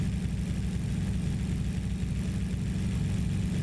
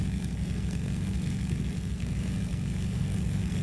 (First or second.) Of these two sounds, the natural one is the first